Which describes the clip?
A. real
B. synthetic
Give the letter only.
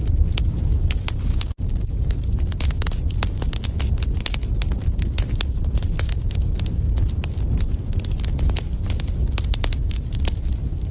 A